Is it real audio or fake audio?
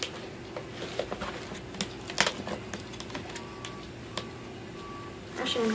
real